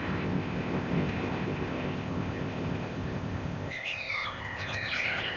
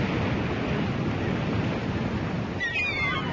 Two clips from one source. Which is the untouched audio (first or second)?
second